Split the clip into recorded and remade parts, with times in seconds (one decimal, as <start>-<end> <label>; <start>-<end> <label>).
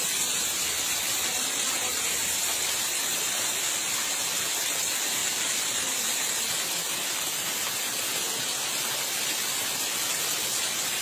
0.0-11.0 recorded